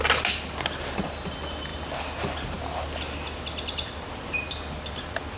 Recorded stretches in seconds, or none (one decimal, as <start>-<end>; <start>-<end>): 0.0-5.4